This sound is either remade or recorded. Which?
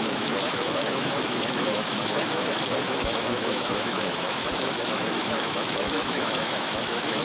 remade